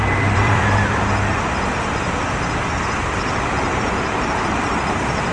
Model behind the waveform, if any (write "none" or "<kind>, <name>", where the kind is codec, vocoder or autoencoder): vocoder, BigVGAN v2